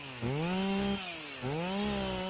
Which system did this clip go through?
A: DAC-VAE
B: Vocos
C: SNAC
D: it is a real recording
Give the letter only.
D